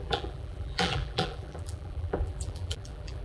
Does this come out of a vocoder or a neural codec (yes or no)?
yes